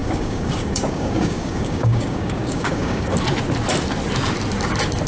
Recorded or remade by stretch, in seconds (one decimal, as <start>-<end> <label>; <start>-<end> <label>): 0.0-3.1 remade; 3.1-5.1 recorded